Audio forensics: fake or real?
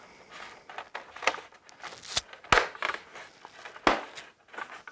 real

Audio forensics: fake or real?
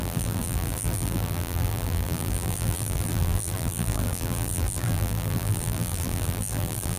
fake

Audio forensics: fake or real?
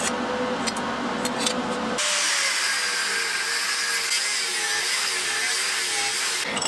real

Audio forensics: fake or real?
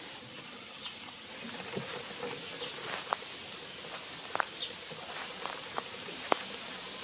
real